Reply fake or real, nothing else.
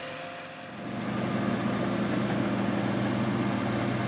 real